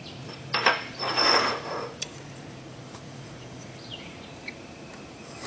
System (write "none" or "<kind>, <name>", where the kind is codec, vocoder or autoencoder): vocoder, Vocos